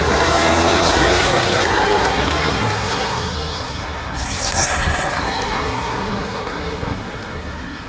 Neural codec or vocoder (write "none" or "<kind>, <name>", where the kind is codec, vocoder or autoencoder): codec, SNAC